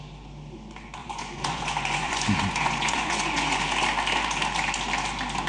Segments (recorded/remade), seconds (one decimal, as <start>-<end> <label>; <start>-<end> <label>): 0.0-1.0 recorded; 1.0-3.6 remade; 3.6-5.5 recorded